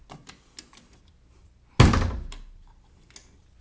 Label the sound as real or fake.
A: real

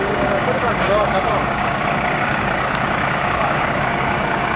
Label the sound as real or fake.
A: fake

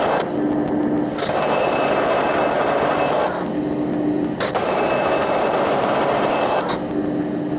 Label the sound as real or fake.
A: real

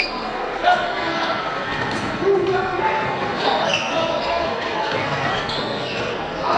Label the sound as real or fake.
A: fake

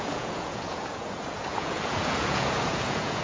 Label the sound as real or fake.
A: fake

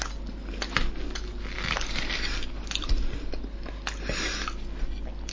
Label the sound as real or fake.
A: real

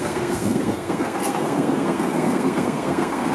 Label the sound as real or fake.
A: fake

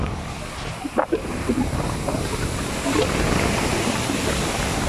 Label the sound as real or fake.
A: real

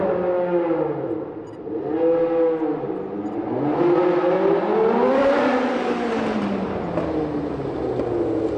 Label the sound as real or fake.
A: real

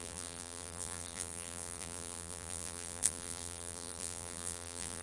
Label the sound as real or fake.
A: fake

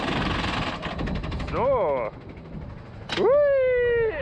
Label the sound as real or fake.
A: real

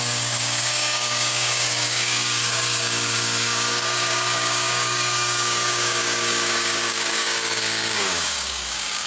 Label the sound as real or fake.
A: fake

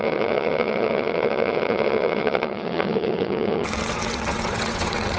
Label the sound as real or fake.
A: fake